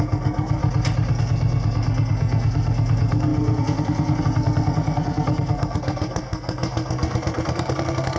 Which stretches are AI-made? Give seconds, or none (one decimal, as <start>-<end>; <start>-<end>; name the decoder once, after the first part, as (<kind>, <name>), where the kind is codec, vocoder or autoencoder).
0.0-0.6 (codec, SNAC); 1.1-8.2